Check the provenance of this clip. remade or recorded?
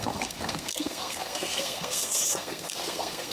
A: remade